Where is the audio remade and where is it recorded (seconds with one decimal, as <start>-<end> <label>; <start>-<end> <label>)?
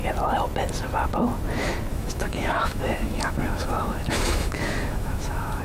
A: 0.0-1.9 recorded; 1.9-5.6 remade